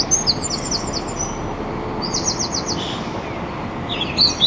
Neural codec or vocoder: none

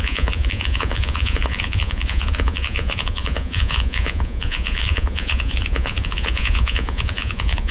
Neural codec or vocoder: vocoder, Vocos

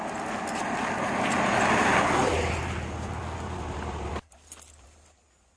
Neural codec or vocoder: none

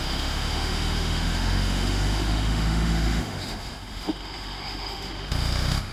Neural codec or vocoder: autoencoder, DAC-VAE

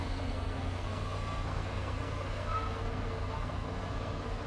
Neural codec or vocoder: codec, SNAC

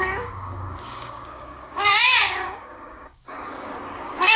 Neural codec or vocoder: codec, DAC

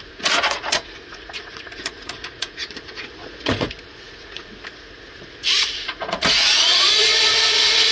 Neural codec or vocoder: vocoder, Vocos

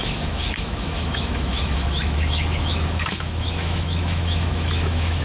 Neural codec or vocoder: autoencoder, DAC-VAE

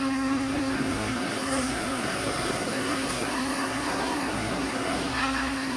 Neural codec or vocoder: codec, SNAC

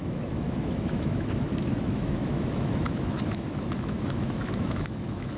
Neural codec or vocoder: autoencoder, DAC-VAE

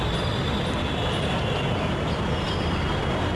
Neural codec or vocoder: none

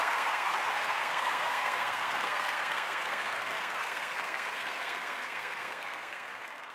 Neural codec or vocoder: codec, SNAC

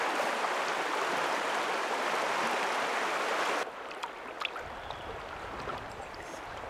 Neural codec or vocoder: none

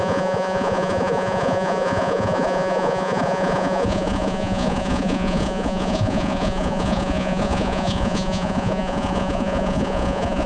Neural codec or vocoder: vocoder, Vocos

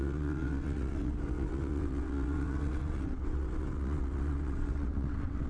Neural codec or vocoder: vocoder, WaveNeXt